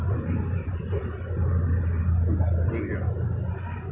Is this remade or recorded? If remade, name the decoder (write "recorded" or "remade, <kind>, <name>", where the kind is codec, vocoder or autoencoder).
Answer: recorded